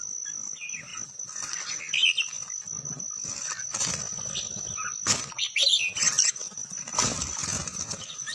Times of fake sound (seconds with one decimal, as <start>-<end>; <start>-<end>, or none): none